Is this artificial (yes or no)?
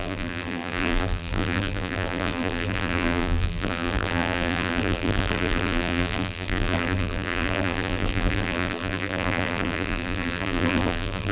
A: yes